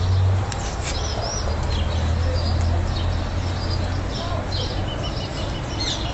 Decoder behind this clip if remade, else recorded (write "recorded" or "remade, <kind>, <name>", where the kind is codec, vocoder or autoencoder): recorded